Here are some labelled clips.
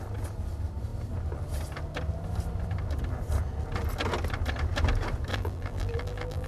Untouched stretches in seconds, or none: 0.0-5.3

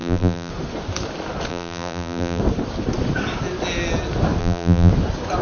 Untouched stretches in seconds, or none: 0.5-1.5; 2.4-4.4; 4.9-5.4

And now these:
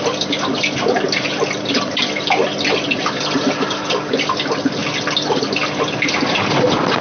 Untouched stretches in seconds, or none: 0.0-7.0